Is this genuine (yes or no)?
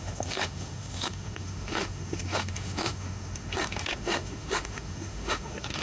no